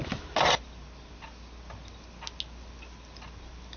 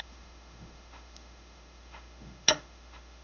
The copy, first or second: second